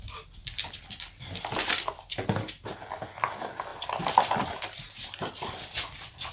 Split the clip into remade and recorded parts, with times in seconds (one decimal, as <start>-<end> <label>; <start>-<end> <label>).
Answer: 0.0-0.4 recorded; 0.4-1.9 remade; 1.9-3.7 recorded; 3.7-6.3 remade